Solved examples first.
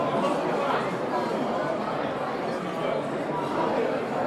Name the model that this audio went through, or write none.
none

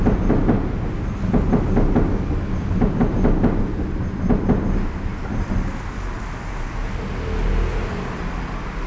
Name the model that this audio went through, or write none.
none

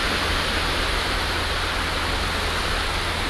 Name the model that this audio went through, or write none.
none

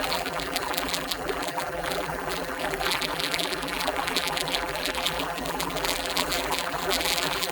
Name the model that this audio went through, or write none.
vocoder, BigVGAN v2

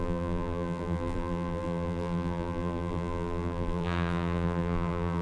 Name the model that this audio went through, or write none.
vocoder, BigVGAN v2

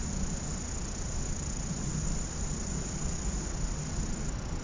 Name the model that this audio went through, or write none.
none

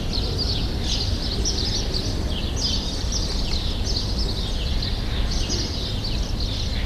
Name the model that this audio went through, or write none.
none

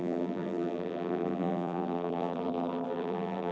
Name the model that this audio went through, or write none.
vocoder, BigVGAN v2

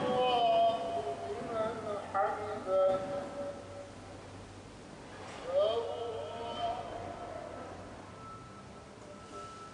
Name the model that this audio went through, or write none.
none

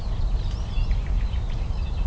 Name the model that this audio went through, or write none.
vocoder, BigVGAN v2